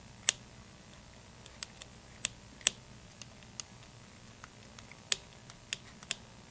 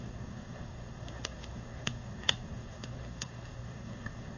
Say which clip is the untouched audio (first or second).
first